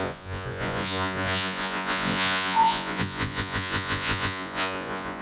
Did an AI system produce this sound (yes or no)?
yes